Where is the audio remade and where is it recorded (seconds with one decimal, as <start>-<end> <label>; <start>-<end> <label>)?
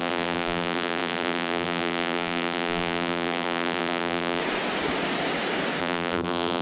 0.0-4.4 remade; 4.4-5.8 recorded; 5.8-6.6 remade